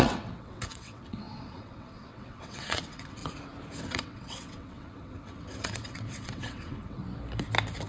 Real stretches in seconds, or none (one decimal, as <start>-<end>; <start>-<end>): 3.2-3.8; 7.0-7.9